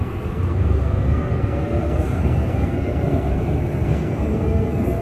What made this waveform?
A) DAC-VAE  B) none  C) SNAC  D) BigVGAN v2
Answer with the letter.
C